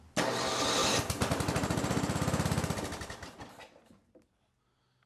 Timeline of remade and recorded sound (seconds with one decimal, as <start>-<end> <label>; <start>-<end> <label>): 0.0-5.1 recorded